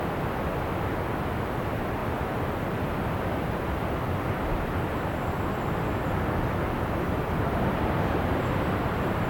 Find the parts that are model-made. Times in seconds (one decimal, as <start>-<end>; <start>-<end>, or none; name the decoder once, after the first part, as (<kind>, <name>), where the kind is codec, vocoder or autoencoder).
2.0-4.0 (vocoder, BigVGAN v2)